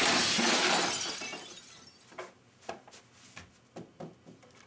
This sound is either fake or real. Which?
real